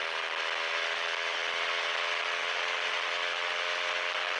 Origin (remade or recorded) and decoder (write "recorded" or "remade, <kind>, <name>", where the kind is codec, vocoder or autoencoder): recorded